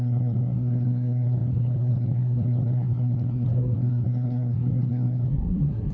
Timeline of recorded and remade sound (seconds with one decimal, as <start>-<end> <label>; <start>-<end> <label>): 0.0-5.9 remade